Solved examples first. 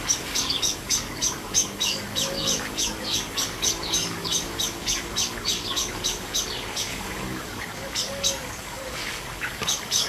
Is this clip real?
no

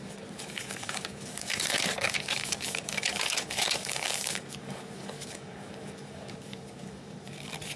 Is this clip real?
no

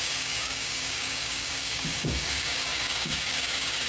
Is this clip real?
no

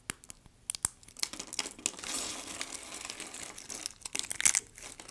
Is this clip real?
yes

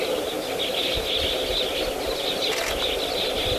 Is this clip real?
yes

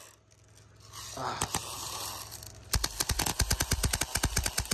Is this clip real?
yes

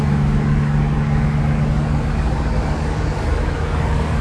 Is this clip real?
no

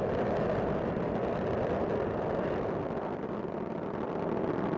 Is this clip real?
yes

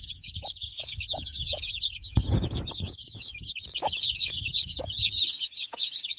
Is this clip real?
no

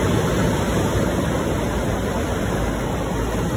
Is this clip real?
yes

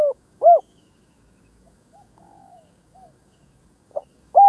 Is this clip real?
no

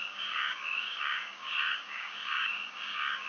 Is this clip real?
no